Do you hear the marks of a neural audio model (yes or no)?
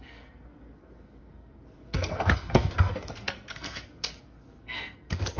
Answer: yes